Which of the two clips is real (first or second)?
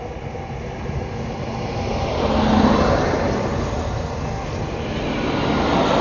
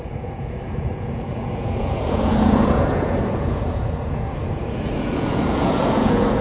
first